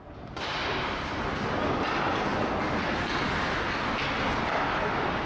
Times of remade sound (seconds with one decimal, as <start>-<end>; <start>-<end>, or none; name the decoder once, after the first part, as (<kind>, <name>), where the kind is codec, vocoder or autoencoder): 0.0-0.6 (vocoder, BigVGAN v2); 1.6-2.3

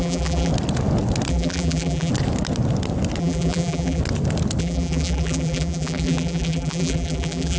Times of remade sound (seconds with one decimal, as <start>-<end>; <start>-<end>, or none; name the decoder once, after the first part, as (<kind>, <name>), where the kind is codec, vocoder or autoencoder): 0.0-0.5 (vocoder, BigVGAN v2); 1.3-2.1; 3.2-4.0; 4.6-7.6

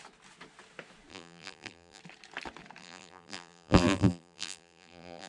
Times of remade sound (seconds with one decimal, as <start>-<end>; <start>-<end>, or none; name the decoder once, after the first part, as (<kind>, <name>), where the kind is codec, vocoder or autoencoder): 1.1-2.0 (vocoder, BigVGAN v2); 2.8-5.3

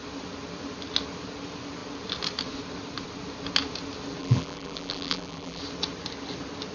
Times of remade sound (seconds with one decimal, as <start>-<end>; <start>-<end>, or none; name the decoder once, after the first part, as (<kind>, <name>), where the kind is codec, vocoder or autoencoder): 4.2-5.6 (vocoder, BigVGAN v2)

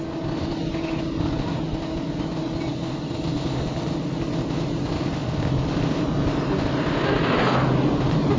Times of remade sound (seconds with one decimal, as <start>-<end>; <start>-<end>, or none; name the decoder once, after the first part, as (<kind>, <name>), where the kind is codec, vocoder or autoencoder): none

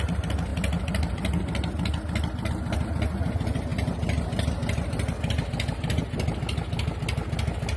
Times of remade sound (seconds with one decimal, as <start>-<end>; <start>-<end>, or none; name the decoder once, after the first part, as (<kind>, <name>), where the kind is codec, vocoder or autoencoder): none